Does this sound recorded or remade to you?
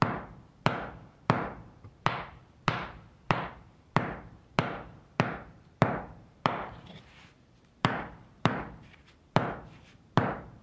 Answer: remade